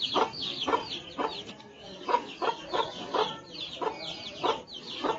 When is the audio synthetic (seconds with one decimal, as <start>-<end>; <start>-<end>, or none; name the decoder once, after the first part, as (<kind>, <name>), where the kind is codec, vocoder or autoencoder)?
0.0-0.8 (codec, DAC); 1.5-3.2; 4.8-5.2